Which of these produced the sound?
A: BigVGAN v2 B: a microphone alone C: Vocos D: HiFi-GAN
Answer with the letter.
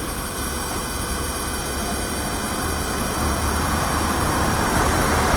A